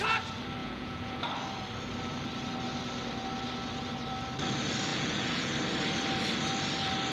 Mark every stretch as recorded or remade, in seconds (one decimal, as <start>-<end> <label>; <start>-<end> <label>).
0.0-0.6 recorded; 0.6-1.2 remade; 1.2-4.9 recorded; 4.9-5.5 remade; 5.5-7.1 recorded